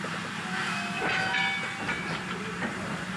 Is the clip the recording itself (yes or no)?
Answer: yes